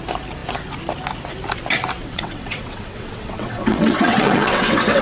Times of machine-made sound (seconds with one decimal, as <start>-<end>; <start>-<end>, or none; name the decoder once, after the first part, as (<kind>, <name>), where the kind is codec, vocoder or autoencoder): 2.0-5.0 (vocoder, WaveNeXt)